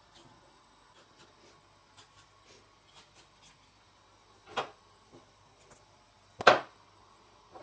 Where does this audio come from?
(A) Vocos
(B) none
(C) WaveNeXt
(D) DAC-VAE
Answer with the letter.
B